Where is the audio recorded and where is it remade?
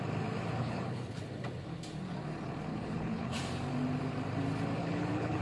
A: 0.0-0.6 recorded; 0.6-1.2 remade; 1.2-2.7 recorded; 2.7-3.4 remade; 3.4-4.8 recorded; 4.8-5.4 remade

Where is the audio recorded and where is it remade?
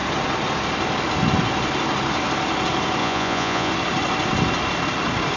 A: 0.0-3.0 recorded; 3.0-3.7 remade; 3.7-5.4 recorded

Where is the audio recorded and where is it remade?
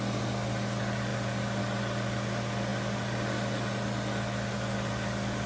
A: 0.0-5.5 recorded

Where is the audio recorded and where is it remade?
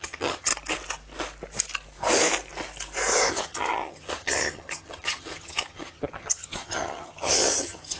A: 0.0-0.5 remade; 0.5-3.3 recorded; 3.3-8.0 remade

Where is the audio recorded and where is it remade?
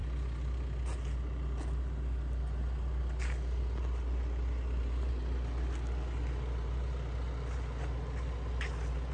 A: 0.0-9.1 recorded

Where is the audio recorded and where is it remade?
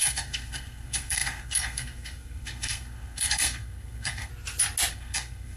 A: 0.0-4.3 remade; 4.3-4.9 recorded; 4.9-5.6 remade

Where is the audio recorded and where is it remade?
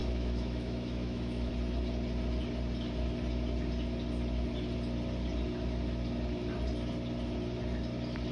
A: 0.0-1.5 remade; 1.5-8.3 recorded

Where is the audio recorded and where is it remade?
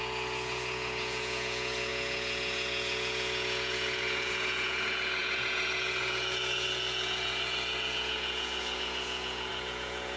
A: 0.0-10.2 remade